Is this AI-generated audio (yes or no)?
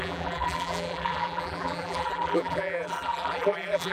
yes